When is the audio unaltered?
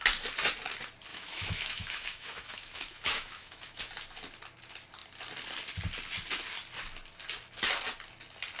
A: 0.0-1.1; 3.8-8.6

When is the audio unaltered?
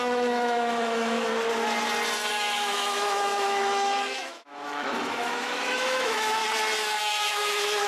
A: 1.3-2.3; 6.4-7.0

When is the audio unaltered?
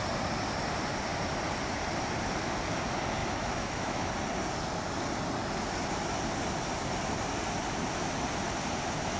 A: 0.0-3.2; 4.1-9.2